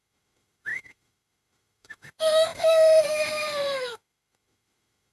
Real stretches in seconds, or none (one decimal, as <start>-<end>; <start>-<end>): none